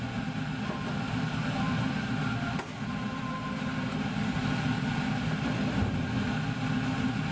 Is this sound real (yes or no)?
yes